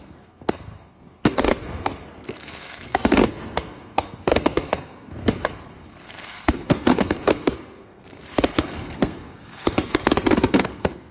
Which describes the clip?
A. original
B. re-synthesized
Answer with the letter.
B